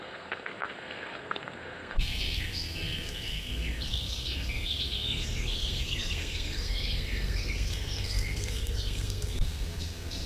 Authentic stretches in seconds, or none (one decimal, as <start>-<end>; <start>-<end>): none

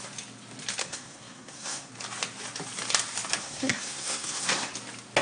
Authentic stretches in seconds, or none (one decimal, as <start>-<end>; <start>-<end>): 0.0-0.8; 1.9-3.4; 4.7-5.2

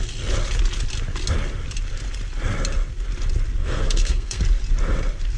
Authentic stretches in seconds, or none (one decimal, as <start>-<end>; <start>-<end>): 0.0-3.6; 4.4-5.4

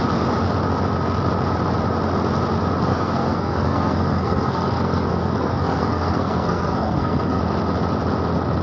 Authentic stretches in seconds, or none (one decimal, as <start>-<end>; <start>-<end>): 0.0-2.9; 7.4-8.6

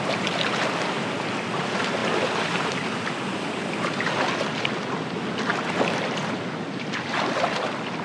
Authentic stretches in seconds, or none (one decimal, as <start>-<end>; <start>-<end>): 0.0-8.0

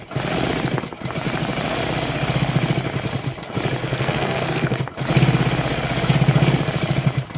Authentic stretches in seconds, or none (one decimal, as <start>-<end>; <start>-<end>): 0.0-3.8; 4.8-7.4

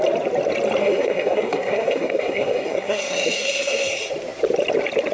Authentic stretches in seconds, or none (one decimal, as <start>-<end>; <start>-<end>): 0.0-0.8; 3.9-5.1